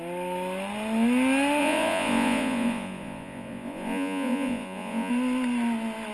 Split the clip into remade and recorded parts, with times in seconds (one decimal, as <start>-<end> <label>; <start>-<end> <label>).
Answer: 0.0-1.6 recorded; 1.6-5.1 remade; 5.1-6.1 recorded